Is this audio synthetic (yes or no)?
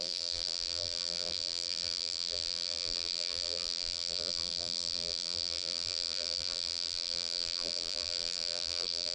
yes